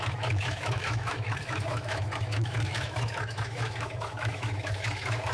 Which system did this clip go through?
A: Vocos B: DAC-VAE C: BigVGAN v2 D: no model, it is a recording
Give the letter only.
B